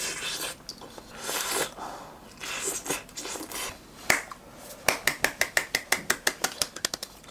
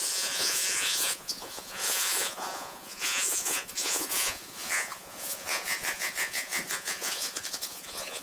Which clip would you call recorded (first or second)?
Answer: first